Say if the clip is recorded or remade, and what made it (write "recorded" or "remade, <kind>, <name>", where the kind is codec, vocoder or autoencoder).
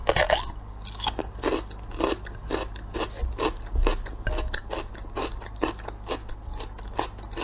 recorded